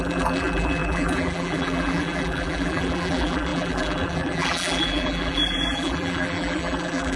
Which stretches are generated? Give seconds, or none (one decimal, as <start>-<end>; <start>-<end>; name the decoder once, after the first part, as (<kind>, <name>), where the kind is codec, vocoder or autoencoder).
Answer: 0.0-7.2 (vocoder, BigVGAN v2)